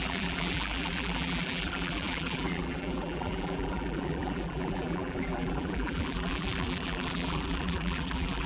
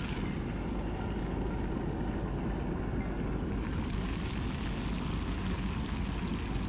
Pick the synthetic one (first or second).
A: first